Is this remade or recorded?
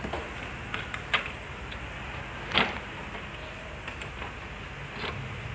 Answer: recorded